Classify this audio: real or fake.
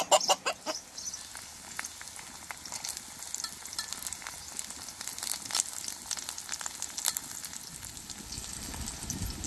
real